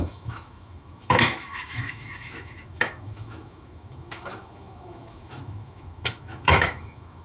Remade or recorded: remade